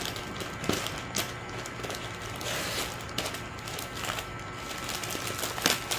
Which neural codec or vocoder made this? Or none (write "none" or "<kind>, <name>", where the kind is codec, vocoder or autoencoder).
none